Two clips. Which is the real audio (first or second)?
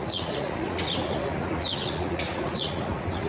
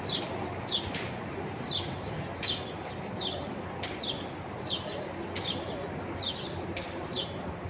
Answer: second